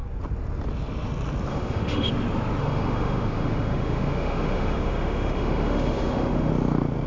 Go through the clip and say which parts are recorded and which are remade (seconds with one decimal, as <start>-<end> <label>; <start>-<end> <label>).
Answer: 0.0-1.5 recorded; 1.5-2.1 remade; 2.1-2.6 recorded; 2.6-6.5 remade; 6.5-7.1 recorded